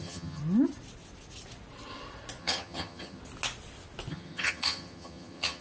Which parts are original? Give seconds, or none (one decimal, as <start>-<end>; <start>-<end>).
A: 0.4-2.4; 3.2-4.1

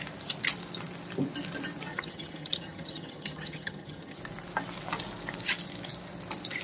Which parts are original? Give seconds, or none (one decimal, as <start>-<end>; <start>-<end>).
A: 0.0-1.9; 4.2-6.6